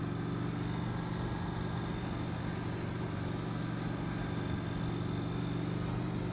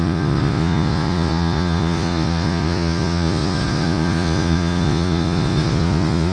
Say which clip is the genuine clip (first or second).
first